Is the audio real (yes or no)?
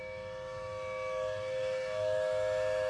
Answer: no